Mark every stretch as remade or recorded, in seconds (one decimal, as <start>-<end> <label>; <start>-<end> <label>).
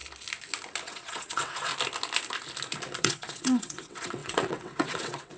0.0-0.8 recorded; 0.8-1.7 remade; 1.7-3.0 recorded; 3.0-5.4 remade